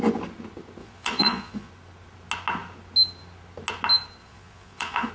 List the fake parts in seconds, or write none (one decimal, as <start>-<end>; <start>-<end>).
0.8-1.7; 4.2-5.1